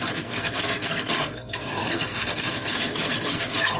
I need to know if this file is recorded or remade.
remade